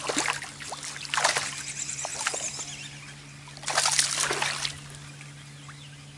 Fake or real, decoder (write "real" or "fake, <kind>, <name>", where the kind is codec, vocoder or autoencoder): real